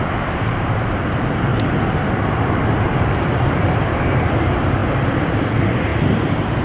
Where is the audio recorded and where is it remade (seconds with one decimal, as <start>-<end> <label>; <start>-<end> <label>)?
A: 0.0-1.5 remade; 1.5-2.1 recorded; 2.1-4.8 remade; 4.8-5.3 recorded; 5.3-6.6 remade